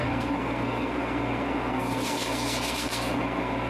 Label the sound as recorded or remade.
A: remade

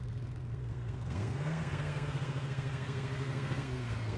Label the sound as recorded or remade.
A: remade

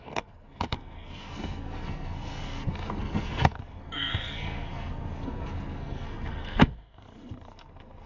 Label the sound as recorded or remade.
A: remade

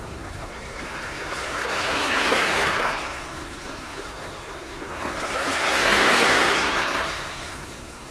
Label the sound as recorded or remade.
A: remade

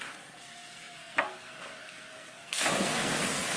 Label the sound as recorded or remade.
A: remade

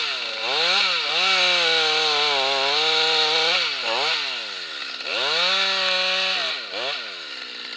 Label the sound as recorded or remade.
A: recorded